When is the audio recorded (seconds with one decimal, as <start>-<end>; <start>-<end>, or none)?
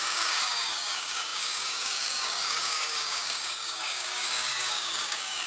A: none